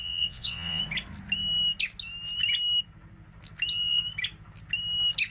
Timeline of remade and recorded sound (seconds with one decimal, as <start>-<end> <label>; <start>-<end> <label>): 0.0-0.8 remade; 0.8-5.3 recorded